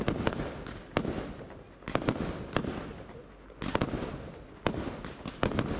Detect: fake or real real